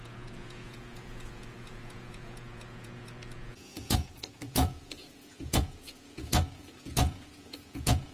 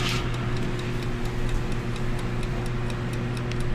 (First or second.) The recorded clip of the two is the second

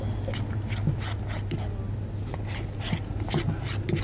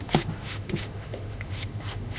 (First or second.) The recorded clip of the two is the first